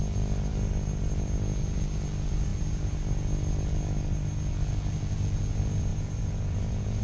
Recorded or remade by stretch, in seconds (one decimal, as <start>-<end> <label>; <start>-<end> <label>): 0.0-5.9 recorded; 5.9-7.0 remade